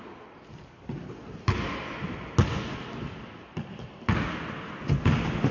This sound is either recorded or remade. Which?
recorded